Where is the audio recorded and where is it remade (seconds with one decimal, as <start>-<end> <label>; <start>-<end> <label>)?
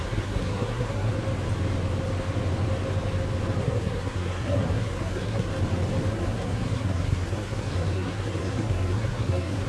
0.0-1.1 remade; 1.1-3.6 recorded; 3.6-5.5 remade; 5.5-6.1 recorded; 6.1-9.7 remade